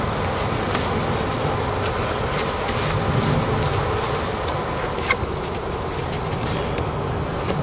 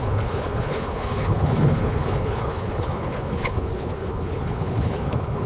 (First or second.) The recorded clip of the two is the first